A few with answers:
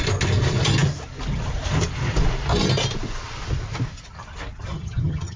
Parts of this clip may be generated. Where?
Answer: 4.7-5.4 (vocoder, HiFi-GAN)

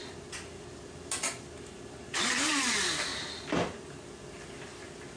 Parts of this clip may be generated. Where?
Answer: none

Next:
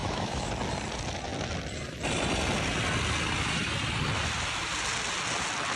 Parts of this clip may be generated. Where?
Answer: 0.0-0.5 (autoencoder, DAC-VAE)

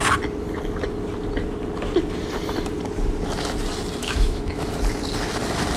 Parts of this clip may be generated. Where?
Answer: 4.0-4.6 (autoencoder, DAC-VAE)

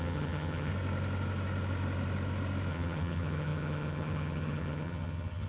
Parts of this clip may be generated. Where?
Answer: 0.0-0.7 (vocoder, HiFi-GAN); 2.7-5.5